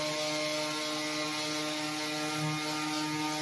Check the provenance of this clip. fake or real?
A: real